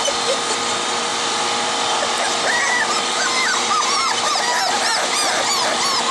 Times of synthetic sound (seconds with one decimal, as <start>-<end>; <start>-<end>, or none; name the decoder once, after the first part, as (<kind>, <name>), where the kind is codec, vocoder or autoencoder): 1.1-4.8 (vocoder, BigVGAN v2)